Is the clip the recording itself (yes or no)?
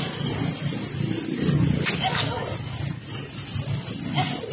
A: yes